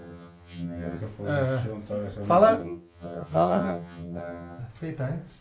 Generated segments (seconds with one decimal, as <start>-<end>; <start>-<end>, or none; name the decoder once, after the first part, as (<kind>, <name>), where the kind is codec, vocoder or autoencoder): 0.0-1.0 (vocoder, HiFi-GAN); 2.6-4.6